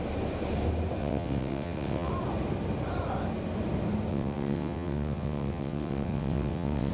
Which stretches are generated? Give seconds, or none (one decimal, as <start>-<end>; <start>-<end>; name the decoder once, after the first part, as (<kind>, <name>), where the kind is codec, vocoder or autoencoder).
1.0-2.1 (vocoder, WaveNeXt); 4.1-6.9